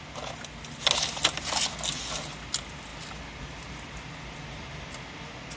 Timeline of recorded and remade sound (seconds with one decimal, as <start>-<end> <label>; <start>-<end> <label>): 0.0-5.6 recorded